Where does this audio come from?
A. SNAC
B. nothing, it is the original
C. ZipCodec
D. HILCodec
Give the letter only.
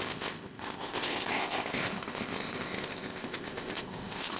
C